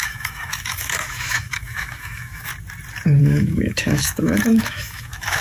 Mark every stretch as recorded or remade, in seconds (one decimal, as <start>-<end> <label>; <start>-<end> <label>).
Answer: 0.0-2.5 remade; 2.5-3.2 recorded; 3.2-5.4 remade